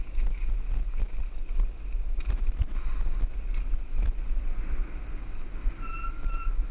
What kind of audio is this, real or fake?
real